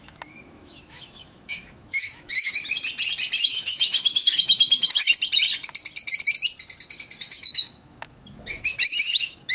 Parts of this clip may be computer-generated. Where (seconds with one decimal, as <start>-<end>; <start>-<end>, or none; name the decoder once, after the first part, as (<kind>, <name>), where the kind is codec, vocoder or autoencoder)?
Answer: 0.0-2.6 (autoencoder, DAC-VAE); 3.4-5.1; 7.3-9.5